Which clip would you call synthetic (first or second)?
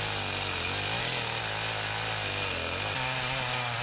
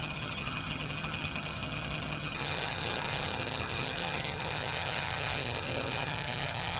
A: second